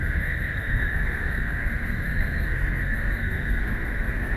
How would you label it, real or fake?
fake